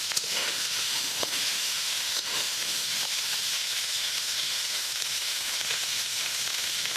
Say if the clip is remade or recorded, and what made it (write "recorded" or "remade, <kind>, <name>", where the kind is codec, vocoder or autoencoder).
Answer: remade, autoencoder, DAC-VAE